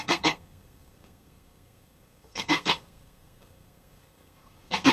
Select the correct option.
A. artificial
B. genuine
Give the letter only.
A